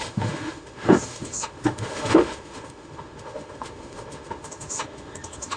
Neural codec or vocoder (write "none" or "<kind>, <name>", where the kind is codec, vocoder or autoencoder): autoencoder, DAC-VAE